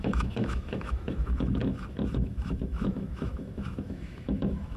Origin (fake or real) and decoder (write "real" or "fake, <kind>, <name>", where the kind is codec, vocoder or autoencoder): fake, autoencoder, DAC-VAE